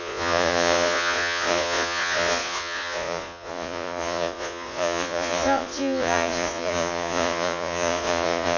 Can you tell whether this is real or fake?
fake